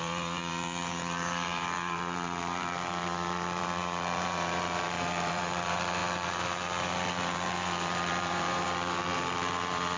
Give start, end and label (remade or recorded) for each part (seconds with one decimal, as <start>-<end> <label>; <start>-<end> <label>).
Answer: 0.0-10.0 remade